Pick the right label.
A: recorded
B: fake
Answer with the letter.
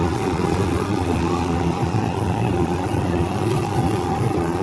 B